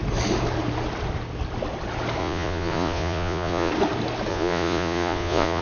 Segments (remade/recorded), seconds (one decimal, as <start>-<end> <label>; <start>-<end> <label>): 0.0-2.2 recorded; 2.2-3.7 remade; 3.7-4.3 recorded; 4.3-5.6 remade

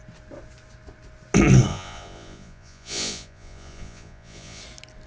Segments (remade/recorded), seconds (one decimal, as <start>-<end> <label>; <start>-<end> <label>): 0.0-1.7 recorded; 1.7-4.6 remade; 4.6-5.1 recorded

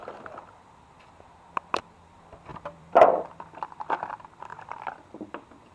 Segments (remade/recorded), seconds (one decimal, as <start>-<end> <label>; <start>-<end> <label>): 0.0-0.7 remade; 0.7-2.5 recorded; 2.5-4.1 remade; 4.1-4.5 recorded; 4.5-5.7 remade

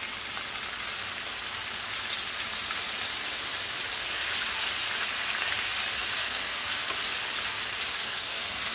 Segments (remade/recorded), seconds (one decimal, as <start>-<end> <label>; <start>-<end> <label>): 0.0-6.2 recorded; 6.2-6.8 remade; 6.8-7.9 recorded; 7.9-8.7 remade

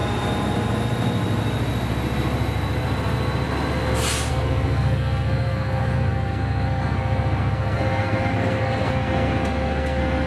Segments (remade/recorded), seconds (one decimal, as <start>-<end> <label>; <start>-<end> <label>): 0.0-4.3 recorded; 4.3-10.3 remade